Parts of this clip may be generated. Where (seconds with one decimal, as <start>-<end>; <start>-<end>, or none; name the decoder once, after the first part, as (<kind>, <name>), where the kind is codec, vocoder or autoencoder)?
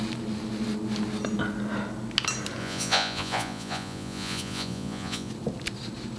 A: 2.6-5.3 (vocoder, Vocos)